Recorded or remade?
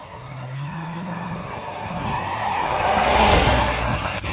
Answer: remade